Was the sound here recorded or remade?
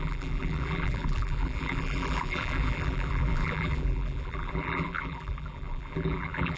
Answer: remade